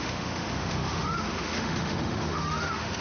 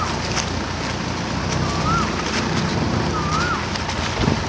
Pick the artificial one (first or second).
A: first